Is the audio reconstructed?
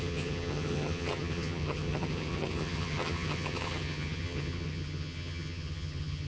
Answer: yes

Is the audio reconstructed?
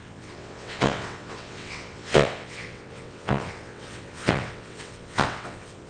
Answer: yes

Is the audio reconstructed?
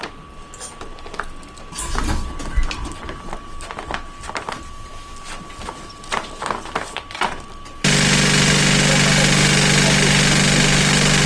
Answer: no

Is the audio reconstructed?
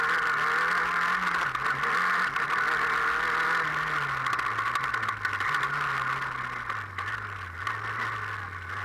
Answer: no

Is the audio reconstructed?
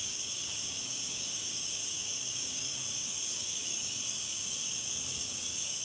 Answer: yes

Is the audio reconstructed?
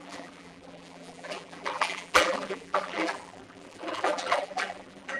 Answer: yes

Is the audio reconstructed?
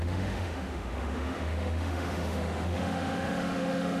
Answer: yes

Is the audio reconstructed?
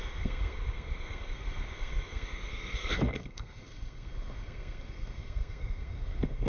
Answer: yes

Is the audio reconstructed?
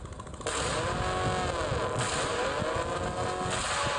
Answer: no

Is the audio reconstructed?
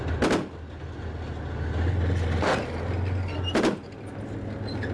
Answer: no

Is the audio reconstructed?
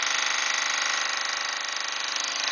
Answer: no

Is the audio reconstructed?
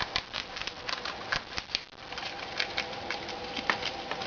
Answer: no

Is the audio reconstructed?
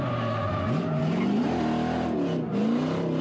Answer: no